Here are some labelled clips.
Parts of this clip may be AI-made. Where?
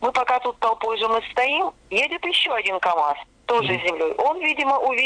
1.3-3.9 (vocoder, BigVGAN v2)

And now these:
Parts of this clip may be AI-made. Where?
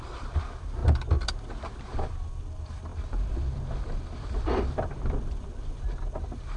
0.0-0.8 (vocoder, BigVGAN v2); 1.8-6.6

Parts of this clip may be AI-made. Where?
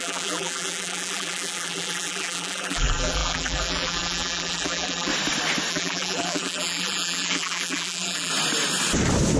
0.0-5.1 (vocoder, BigVGAN v2); 5.7-8.3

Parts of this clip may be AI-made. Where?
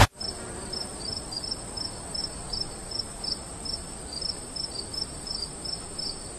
1.1-1.6 (vocoder, BigVGAN v2); 2.2-4.0; 4.9-5.5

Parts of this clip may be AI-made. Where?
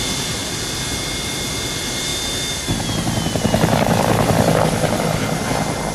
none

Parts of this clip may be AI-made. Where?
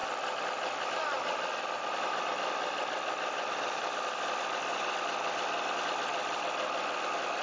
0.0-4.4 (vocoder, BigVGAN v2); 6.1-7.4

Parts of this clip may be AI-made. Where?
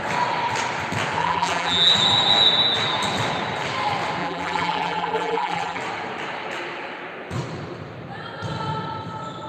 1.2-1.9 (vocoder, BigVGAN v2); 4.2-5.8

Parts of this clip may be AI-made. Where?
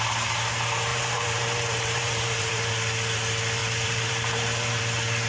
0.9-2.7 (vocoder, BigVGAN v2); 3.6-4.8